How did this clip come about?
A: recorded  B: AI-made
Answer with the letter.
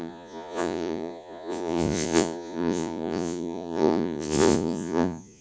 B